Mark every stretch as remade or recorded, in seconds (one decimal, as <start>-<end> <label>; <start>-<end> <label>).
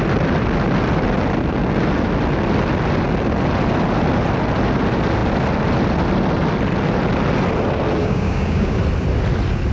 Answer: 0.0-8.0 recorded; 8.0-8.8 remade; 8.8-9.7 recorded